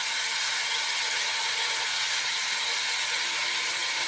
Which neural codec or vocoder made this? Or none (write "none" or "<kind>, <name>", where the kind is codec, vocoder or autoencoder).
vocoder, HiFi-GAN